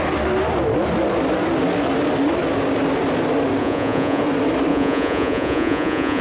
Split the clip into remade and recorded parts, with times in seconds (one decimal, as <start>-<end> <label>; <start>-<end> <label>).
0.0-3.6 recorded; 3.6-4.2 remade; 4.2-4.7 recorded; 4.7-6.2 remade